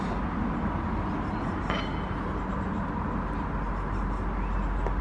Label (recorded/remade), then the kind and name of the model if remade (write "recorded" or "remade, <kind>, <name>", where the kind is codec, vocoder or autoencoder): recorded